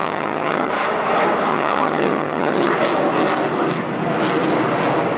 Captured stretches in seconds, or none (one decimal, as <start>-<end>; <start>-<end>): 0.7-1.5; 2.7-5.2